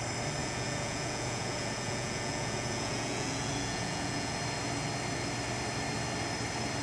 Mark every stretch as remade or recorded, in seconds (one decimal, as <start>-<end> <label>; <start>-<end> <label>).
0.0-0.4 recorded; 0.4-4.3 remade; 4.3-6.8 recorded